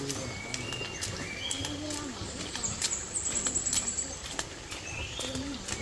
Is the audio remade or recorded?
recorded